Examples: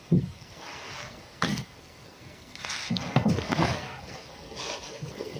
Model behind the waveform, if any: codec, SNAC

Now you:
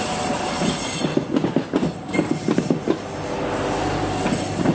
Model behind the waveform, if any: none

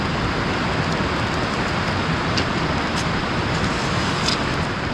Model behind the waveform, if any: none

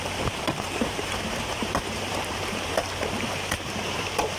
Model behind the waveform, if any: vocoder, BigVGAN v2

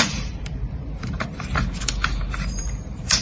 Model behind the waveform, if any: vocoder, BigVGAN v2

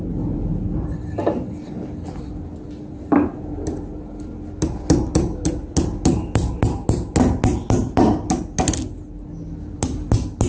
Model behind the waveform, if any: none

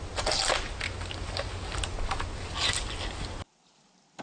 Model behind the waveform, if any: none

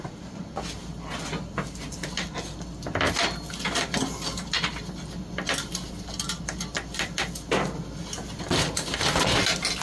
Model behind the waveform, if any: none